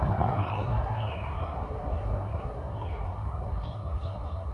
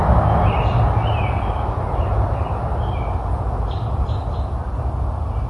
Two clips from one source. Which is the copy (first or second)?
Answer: first